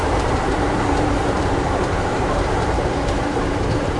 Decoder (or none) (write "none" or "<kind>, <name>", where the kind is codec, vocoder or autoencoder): vocoder, BigVGAN v2